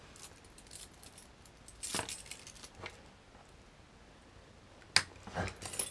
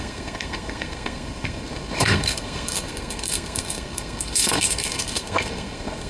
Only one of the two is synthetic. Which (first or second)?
second